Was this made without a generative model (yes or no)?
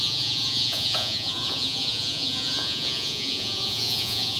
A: no